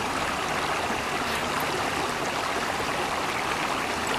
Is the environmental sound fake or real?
real